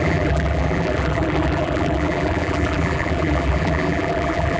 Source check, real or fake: fake